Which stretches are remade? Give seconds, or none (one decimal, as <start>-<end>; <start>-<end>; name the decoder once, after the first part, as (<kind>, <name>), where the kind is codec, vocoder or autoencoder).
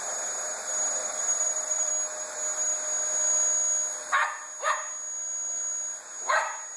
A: 1.0-1.9 (vocoder, BigVGAN v2)